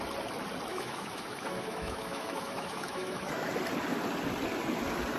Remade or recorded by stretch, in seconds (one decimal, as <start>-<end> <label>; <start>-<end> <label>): 0.0-0.7 recorded; 0.7-3.5 remade; 3.5-5.2 recorded